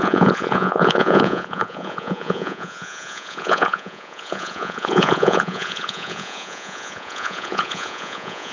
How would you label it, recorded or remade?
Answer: remade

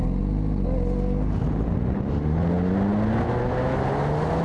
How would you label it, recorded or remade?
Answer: recorded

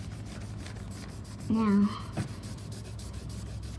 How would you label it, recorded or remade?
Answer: recorded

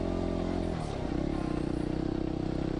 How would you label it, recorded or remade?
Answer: recorded